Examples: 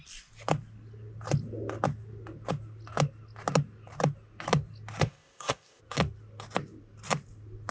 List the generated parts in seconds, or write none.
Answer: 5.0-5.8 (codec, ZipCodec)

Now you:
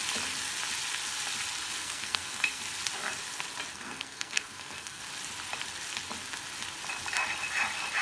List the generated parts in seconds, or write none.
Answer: 1.8-2.6 (codec, SNAC); 3.7-5.0

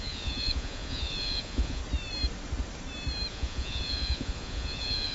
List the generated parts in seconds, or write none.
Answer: 0.0-1.8 (vocoder, Vocos); 3.3-5.1

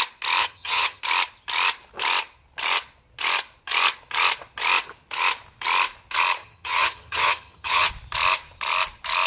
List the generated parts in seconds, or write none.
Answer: 0.4-1.0 (vocoder, HiFi-GAN); 6.4-7.9